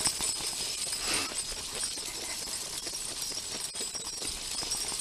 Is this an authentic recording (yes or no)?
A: yes